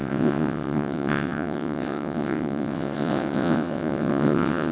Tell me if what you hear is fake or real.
fake